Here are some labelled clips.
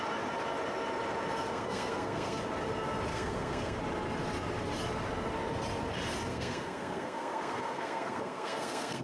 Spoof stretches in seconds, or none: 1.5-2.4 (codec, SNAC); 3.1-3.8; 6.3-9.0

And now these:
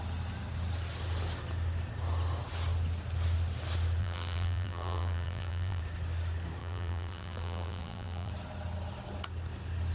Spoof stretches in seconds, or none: 4.0-5.8 (vocoder, BigVGAN v2); 6.6-8.3

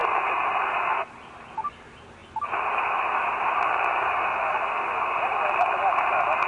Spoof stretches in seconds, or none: none